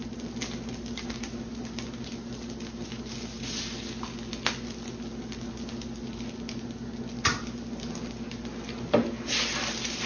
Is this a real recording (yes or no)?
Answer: yes